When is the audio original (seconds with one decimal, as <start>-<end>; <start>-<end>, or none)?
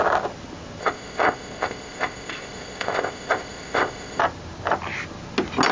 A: 0.0-0.8; 4.2-5.7